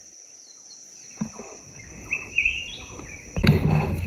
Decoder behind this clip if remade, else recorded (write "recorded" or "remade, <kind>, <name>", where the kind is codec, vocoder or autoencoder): recorded